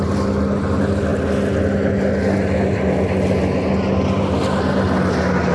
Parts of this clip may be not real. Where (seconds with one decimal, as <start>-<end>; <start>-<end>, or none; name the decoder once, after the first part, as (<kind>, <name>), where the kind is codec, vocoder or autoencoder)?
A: none